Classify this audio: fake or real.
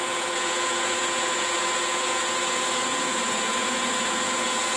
fake